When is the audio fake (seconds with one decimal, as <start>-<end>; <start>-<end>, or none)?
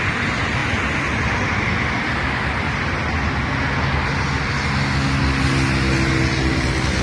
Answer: none